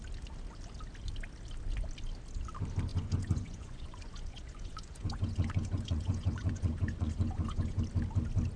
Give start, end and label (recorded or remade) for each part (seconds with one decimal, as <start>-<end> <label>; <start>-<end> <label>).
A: 0.0-2.9 recorded; 2.9-7.8 remade; 7.8-8.6 recorded